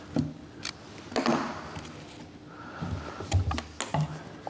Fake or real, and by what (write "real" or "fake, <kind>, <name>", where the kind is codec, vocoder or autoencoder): real